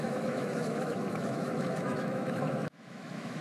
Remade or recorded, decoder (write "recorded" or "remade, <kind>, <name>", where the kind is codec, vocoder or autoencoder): remade, autoencoder, DAC-VAE